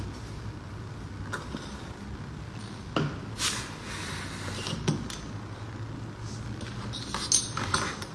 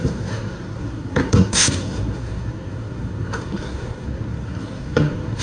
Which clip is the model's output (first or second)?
second